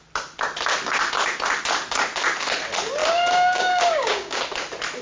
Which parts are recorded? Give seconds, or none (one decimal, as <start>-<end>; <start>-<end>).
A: 0.0-3.0; 4.4-5.0